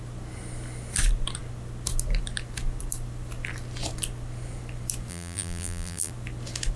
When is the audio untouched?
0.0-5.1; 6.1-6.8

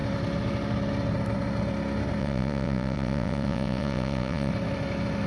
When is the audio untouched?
0.0-2.2; 4.5-5.3

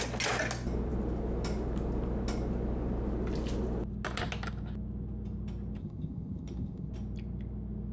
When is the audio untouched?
0.0-5.8; 6.9-7.9